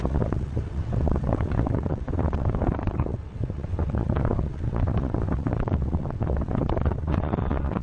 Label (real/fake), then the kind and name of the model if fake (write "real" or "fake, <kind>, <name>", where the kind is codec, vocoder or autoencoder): fake, vocoder, WaveNeXt